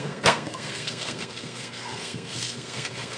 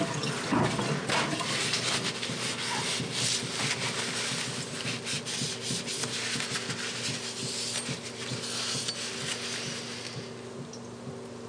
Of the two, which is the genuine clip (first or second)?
second